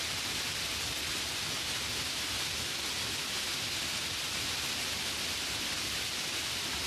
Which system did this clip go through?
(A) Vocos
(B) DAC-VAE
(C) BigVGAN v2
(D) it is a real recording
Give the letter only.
D